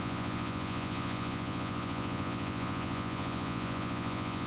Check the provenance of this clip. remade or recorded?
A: remade